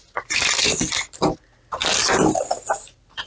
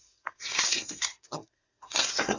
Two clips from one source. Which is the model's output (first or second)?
second